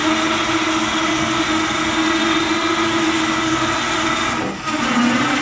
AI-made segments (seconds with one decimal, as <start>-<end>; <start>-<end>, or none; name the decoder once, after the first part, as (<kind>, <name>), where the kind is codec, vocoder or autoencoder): none